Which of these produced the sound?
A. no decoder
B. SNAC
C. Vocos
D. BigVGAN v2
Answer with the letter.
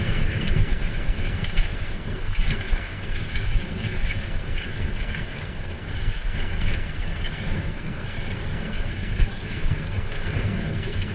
B